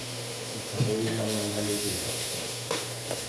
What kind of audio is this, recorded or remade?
remade